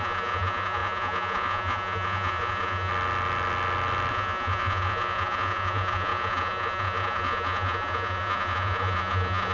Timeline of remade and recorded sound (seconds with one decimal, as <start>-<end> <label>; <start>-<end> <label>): 0.0-2.9 remade; 2.9-4.1 recorded; 4.1-9.5 remade